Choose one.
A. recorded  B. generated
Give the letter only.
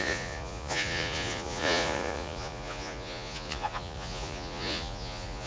B